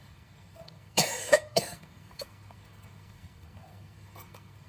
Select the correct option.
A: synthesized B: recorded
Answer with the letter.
A